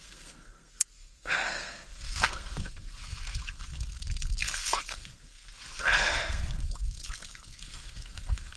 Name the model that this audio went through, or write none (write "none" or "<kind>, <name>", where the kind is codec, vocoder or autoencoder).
codec, SNAC